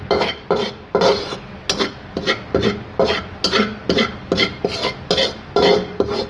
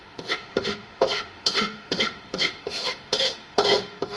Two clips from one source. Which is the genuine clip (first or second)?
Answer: first